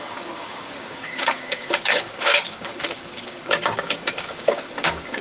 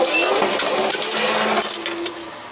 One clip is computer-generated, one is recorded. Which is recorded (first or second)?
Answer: second